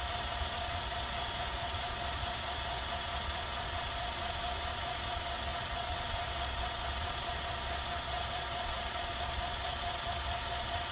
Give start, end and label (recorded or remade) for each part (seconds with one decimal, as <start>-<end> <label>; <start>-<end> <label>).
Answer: 0.0-0.6 recorded; 0.6-10.9 remade